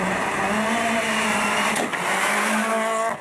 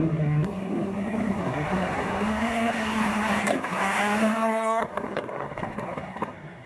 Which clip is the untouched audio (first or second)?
first